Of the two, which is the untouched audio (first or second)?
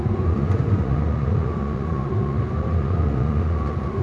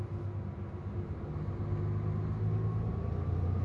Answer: second